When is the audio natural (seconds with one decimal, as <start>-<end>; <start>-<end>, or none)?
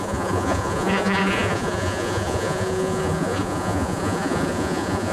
none